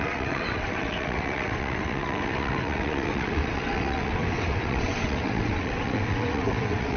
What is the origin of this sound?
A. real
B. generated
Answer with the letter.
B